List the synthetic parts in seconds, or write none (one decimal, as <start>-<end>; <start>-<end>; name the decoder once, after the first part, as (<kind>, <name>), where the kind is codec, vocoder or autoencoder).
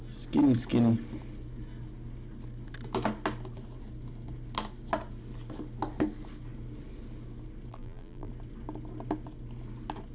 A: 7.7-8.3 (vocoder, BigVGAN v2)